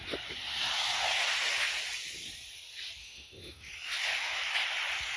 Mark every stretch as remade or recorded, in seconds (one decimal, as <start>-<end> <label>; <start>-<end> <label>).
0.0-3.0 recorded; 3.0-3.7 remade; 3.7-5.2 recorded